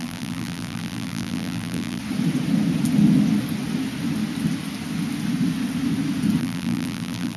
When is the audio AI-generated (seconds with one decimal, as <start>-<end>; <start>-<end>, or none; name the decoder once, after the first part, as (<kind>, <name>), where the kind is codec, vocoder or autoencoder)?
0.0-2.0 (vocoder, BigVGAN v2); 6.4-7.4